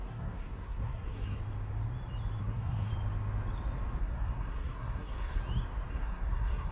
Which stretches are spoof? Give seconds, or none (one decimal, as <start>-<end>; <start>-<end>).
0.0-1.4; 2.4-2.9; 4.0-5.4; 5.9-6.7